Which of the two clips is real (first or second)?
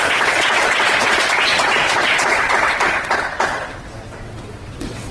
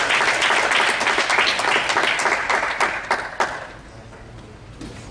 second